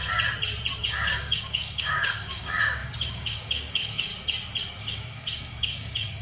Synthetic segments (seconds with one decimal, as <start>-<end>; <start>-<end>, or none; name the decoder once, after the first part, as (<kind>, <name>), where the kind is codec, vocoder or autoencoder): 0.8-4.1 (codec, DAC); 4.8-6.2